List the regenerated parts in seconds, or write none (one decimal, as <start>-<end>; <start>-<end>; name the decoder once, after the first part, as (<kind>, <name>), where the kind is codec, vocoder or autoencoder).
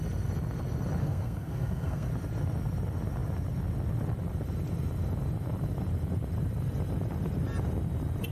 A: 1.0-2.1 (codec, SNAC)